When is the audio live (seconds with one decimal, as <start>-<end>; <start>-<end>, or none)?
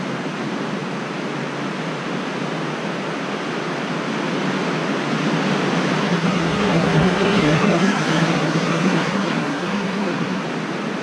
0.0-6.0; 10.4-11.0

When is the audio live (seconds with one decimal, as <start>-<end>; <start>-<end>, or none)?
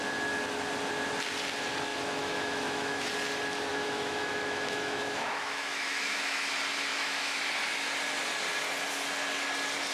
0.0-1.9; 3.1-3.7; 6.5-6.9; 7.5-9.9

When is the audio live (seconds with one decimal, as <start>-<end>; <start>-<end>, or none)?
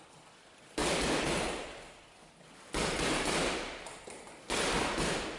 0.0-0.8; 4.0-5.4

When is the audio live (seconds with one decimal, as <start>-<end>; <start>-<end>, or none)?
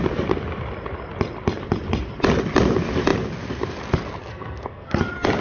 0.0-4.2; 5.0-5.4